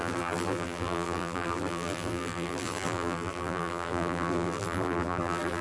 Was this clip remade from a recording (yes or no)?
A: yes